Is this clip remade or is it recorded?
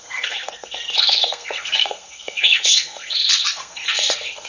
remade